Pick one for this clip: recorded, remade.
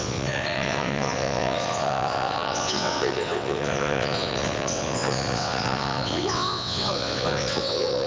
remade